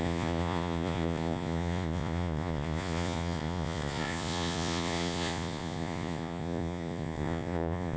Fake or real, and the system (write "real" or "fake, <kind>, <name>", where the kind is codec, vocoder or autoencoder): fake, vocoder, Vocos